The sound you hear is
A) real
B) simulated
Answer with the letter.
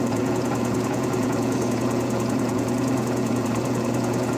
B